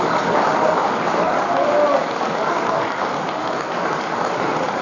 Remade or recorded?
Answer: remade